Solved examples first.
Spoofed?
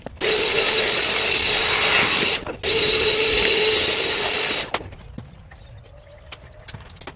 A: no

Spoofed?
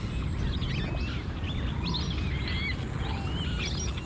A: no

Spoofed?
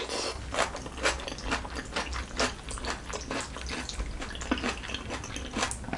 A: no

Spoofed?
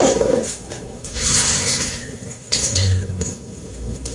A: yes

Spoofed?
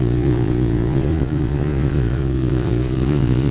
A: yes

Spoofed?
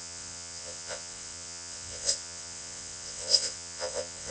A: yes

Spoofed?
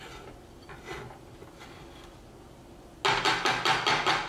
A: no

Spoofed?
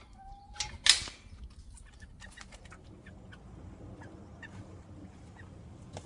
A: no